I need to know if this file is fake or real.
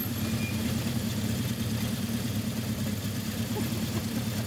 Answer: fake